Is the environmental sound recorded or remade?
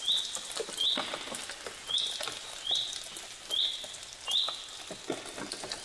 recorded